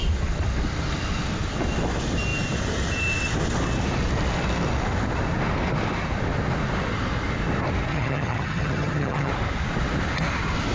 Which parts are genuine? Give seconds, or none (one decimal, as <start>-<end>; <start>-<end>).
0.0-7.9; 9.3-10.7